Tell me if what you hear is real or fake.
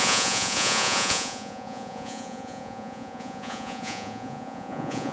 fake